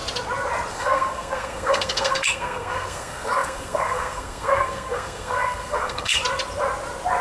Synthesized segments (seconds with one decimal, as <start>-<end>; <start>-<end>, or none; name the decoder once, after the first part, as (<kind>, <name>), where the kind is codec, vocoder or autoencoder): 0.7-6.2 (codec, SNAC)